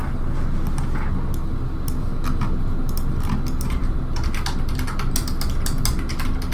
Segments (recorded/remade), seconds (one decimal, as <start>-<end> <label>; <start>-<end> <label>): 0.0-6.5 recorded